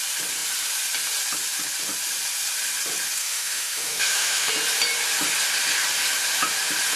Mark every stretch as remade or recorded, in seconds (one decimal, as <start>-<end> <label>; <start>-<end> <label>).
0.0-3.2 recorded; 3.2-4.5 remade; 4.5-7.0 recorded